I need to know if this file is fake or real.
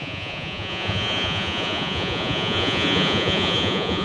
fake